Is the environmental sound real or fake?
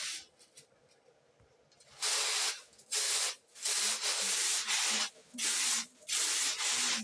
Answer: real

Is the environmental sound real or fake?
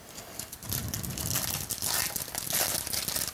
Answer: real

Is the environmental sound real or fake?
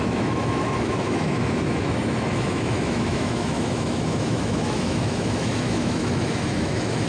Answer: fake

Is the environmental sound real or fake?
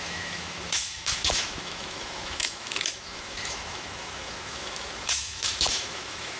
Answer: fake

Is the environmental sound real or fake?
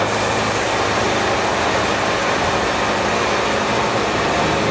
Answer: real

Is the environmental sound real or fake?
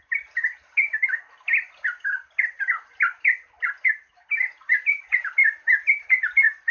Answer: real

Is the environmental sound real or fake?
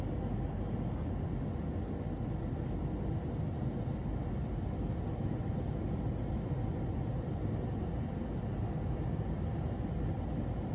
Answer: real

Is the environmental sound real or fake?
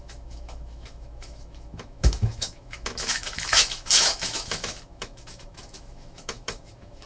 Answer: fake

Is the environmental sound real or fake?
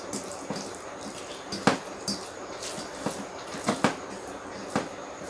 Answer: real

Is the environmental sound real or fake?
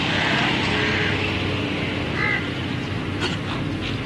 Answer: real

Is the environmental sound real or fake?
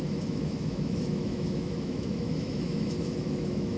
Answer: fake